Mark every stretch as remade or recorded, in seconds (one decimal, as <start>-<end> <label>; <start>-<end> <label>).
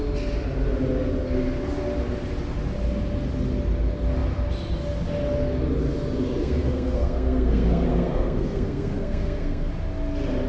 0.0-6.4 recorded; 6.4-9.7 remade; 9.7-10.5 recorded